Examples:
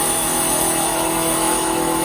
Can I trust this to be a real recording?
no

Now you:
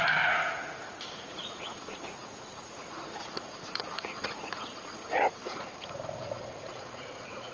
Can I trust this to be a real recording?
no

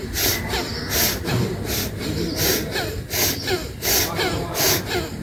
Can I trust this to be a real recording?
no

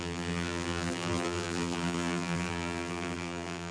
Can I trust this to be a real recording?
no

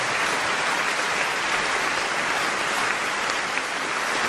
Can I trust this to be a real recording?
yes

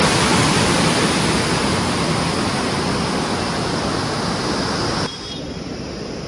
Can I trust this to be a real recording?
yes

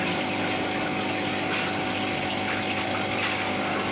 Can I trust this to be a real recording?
yes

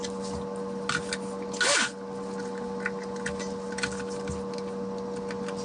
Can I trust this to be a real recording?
yes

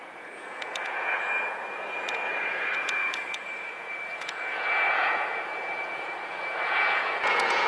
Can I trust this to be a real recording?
no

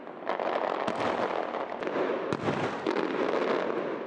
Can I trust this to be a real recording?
yes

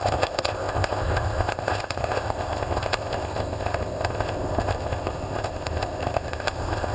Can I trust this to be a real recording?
no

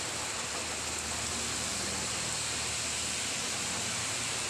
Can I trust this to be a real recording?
yes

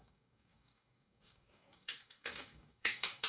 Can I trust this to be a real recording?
no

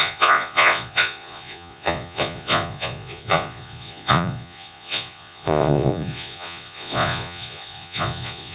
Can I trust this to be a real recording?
no